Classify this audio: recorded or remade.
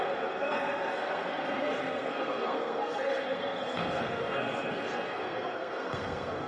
remade